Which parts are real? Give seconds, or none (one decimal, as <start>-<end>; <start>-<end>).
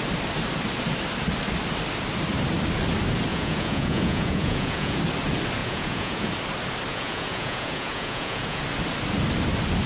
0.0-3.3; 5.0-5.6; 6.3-6.9; 8.6-9.9